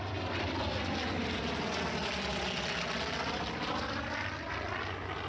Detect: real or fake real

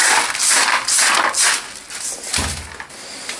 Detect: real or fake real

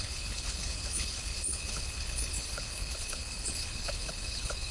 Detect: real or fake fake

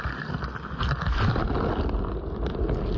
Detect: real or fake real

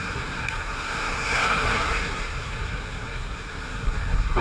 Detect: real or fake fake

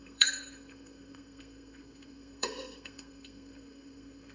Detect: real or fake fake